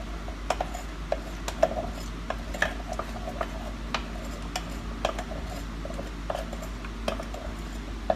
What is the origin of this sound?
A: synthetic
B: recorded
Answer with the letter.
B